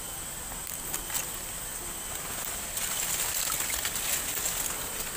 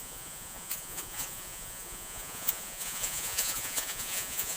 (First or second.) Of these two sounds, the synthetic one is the second